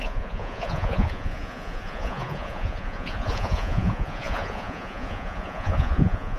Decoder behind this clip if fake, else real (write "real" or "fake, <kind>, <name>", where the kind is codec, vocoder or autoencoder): fake, vocoder, Vocos